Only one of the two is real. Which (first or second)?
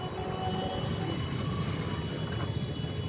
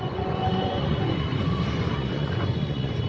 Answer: first